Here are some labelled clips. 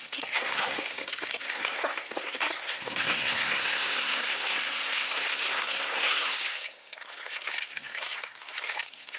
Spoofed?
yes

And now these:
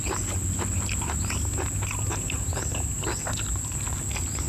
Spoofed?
no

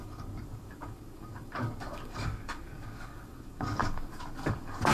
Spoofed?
yes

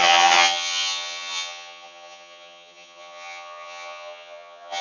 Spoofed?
yes